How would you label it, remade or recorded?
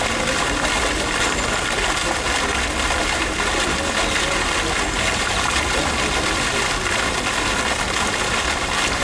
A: recorded